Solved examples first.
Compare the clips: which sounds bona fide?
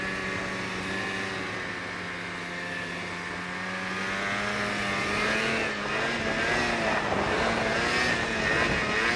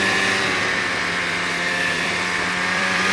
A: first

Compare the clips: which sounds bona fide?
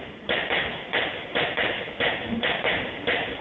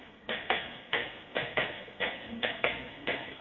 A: first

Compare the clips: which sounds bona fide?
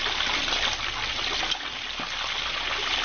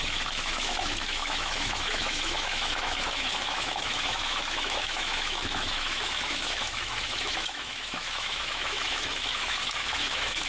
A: first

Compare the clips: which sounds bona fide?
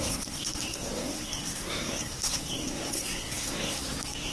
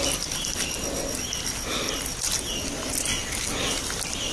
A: second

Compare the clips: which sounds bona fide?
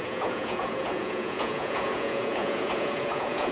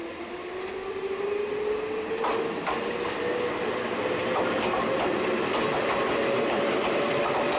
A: second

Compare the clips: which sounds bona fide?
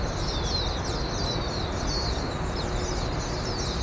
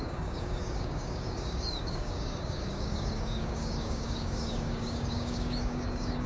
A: first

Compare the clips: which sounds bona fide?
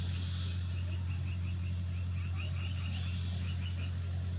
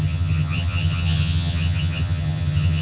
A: first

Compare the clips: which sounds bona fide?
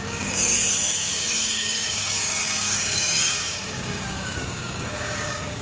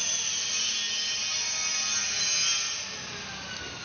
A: second